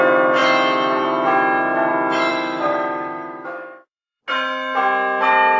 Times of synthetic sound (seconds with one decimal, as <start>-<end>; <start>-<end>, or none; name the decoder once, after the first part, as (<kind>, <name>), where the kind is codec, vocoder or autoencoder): 2.3-4.2 (autoencoder, DAC-VAE)